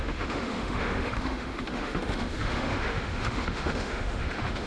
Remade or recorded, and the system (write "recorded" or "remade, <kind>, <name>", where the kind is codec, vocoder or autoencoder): remade, autoencoder, DAC-VAE